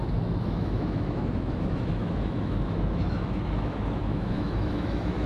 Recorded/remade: remade